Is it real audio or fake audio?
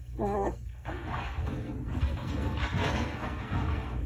fake